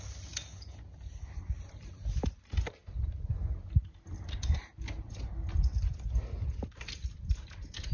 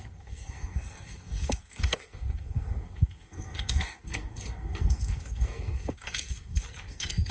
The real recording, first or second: first